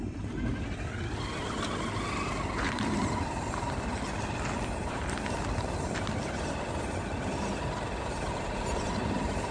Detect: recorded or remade recorded